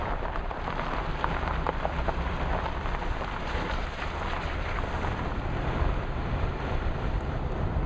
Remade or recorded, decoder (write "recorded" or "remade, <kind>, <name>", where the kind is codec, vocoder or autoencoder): remade, vocoder, BigVGAN v2